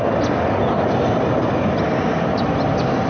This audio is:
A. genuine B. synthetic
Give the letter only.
A